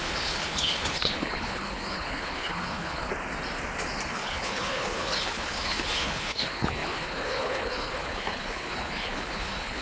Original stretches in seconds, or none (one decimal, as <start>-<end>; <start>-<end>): 3.1-4.1